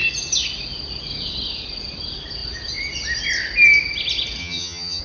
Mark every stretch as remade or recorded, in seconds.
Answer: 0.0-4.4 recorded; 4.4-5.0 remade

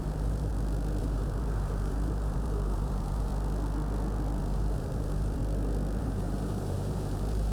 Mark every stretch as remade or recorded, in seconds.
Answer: 0.0-0.5 remade; 0.5-1.0 recorded; 1.0-3.3 remade; 3.3-4.4 recorded; 4.4-5.4 remade; 5.4-6.0 recorded; 6.0-7.5 remade

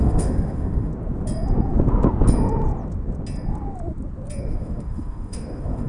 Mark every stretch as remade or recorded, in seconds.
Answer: 0.0-0.9 remade; 0.9-4.4 recorded; 4.4-5.9 remade

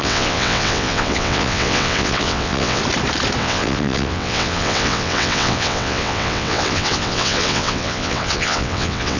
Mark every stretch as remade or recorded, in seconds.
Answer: 0.0-2.8 remade; 2.8-3.4 recorded; 3.4-9.2 remade

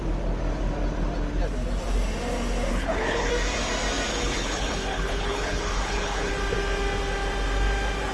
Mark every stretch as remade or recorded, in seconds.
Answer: 0.0-2.7 recorded; 2.7-3.3 remade; 3.3-4.1 recorded; 4.1-6.3 remade; 6.3-8.1 recorded

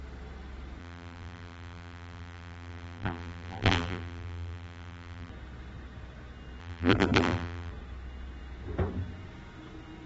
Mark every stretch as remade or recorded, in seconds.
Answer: 0.0-0.8 recorded; 0.8-5.3 remade; 5.3-6.6 recorded; 6.6-7.7 remade; 7.7-10.1 recorded

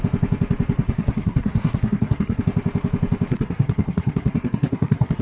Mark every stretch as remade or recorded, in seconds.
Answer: 0.0-0.8 recorded; 0.8-2.4 remade; 2.4-3.3 recorded; 3.3-5.2 remade

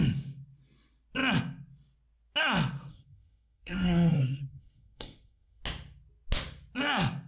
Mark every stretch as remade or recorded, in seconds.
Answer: 0.0-2.9 recorded; 2.9-5.6 remade; 5.6-7.3 recorded